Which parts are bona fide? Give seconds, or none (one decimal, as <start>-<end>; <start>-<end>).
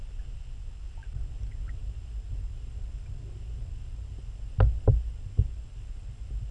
0.0-6.5